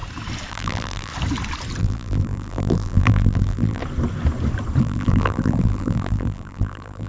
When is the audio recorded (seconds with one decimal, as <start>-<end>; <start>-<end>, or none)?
0.0-0.5; 1.1-1.8; 3.8-4.8